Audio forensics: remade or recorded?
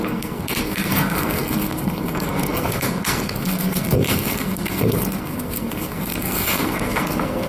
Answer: remade